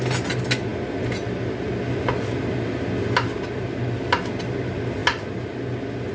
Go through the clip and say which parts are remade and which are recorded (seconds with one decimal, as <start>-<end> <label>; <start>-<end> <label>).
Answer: 0.0-6.1 recorded